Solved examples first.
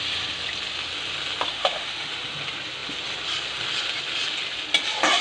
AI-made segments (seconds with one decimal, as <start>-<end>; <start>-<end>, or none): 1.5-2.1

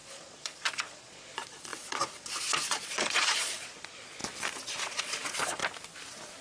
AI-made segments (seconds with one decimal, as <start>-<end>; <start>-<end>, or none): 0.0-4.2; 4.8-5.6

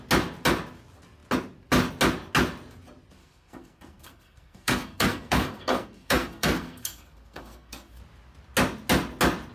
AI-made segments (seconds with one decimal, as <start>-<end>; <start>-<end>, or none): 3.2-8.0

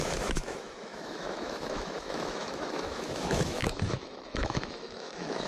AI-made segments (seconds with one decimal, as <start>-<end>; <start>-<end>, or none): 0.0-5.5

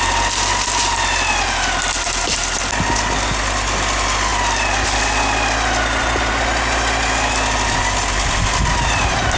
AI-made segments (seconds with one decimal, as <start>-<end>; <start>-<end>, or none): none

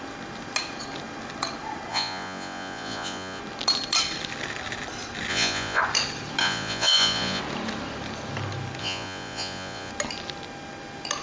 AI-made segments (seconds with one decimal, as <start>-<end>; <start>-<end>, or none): 1.9-3.4; 5.3-5.8; 6.4-7.4; 8.8-9.9

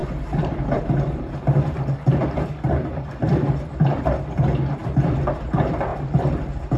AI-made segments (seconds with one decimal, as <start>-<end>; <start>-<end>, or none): 0.0-6.8